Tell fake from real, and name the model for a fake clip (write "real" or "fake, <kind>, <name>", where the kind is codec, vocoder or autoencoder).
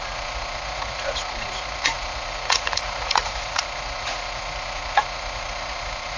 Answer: fake, vocoder, Vocos